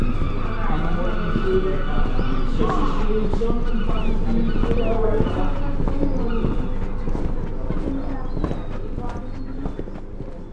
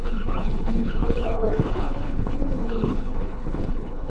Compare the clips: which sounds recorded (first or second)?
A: first